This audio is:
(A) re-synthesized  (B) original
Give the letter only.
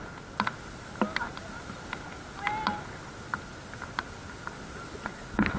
B